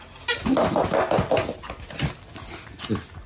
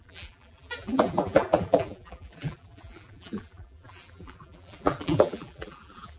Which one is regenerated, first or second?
second